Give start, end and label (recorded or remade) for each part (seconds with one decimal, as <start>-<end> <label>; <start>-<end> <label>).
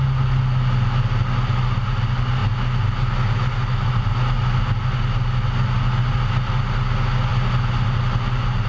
0.0-8.7 recorded